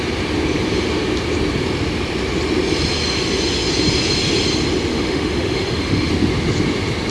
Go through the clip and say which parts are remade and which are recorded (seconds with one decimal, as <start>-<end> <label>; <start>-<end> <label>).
0.0-4.9 recorded; 4.9-6.1 remade; 6.1-7.1 recorded